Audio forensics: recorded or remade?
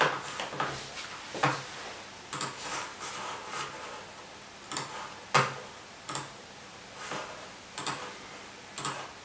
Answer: recorded